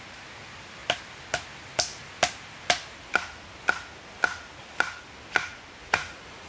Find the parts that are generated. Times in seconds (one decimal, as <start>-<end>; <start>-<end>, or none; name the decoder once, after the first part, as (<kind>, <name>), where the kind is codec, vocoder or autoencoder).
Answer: 5.8-6.5 (vocoder, Vocos)